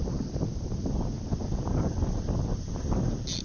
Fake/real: real